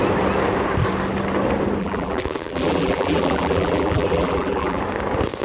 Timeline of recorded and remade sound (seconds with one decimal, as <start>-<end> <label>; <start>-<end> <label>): 0.0-1.8 recorded; 1.8-4.8 remade; 4.8-5.4 recorded

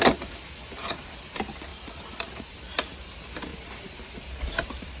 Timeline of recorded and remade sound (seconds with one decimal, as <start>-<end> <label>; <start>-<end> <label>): 0.0-1.7 recorded; 1.7-2.6 remade; 2.6-5.0 recorded

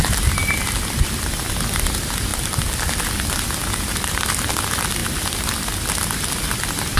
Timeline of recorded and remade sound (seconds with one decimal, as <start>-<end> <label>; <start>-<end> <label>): 0.0-2.3 recorded; 2.3-3.1 remade; 3.1-3.6 recorded; 3.6-4.3 remade; 4.3-7.0 recorded

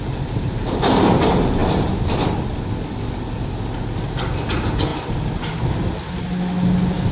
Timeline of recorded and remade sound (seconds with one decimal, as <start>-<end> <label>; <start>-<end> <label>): 0.0-1.0 remade; 1.0-7.1 recorded

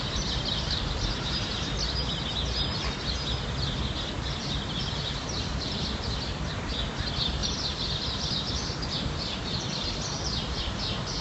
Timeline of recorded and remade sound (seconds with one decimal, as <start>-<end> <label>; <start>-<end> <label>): 0.0-1.5 remade; 1.5-4.4 recorded; 4.4-11.2 remade

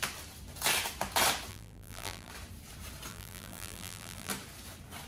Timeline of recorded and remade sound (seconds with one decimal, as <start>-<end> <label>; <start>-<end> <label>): 0.0-1.5 recorded; 1.5-2.3 remade; 2.3-3.1 recorded; 3.1-4.3 remade; 4.3-5.1 recorded

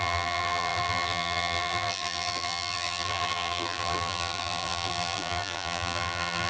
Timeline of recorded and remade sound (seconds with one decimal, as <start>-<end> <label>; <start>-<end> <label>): 0.0-6.5 remade